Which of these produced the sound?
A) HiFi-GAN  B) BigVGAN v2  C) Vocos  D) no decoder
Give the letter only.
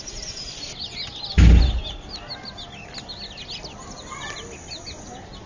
D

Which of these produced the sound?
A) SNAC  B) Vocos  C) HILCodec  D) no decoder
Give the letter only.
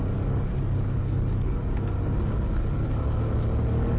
D